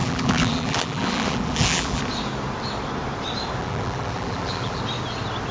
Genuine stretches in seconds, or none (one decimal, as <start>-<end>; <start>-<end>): 2.0-3.6; 4.8-5.5